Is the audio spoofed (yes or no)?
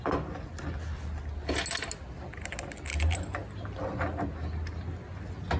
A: no